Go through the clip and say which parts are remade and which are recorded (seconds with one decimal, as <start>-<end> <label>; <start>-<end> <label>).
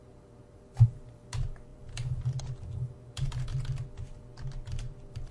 0.0-3.5 remade; 3.5-4.8 recorded; 4.8-5.3 remade